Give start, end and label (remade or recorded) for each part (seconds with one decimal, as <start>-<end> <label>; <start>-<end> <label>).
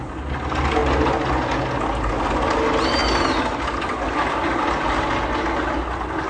0.0-6.3 recorded